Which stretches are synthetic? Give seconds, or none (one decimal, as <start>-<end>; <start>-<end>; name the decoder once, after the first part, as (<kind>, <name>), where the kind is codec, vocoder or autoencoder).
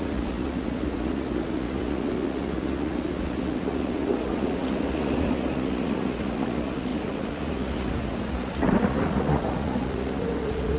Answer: 0.0-10.8 (vocoder, Vocos)